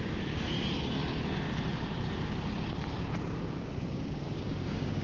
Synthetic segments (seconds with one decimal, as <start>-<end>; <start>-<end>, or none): 0.0-0.4; 3.4-5.0